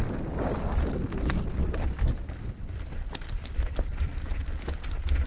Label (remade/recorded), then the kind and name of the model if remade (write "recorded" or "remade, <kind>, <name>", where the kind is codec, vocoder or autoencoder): recorded